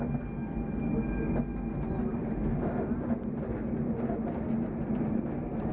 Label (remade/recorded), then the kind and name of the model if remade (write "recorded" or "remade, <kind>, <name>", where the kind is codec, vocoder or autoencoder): recorded